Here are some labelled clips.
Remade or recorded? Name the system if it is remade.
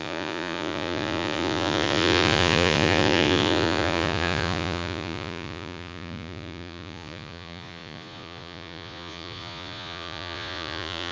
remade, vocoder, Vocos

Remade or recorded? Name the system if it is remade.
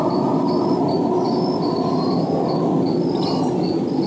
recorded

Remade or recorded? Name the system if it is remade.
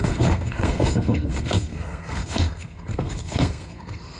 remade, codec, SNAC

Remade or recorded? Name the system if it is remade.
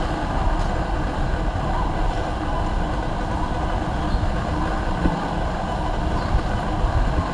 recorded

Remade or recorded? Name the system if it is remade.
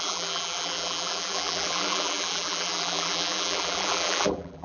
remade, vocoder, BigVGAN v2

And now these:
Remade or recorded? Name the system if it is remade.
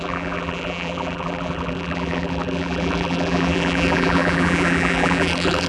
remade, vocoder, BigVGAN v2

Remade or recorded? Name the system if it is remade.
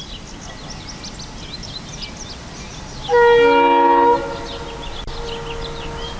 recorded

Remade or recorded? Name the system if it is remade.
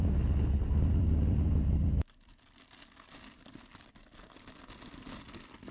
recorded